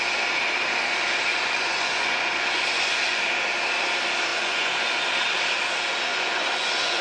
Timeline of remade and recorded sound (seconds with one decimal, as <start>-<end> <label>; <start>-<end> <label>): 0.0-1.3 recorded; 1.3-3.2 remade; 3.2-4.3 recorded; 4.3-5.0 remade; 5.0-6.1 recorded; 6.1-7.0 remade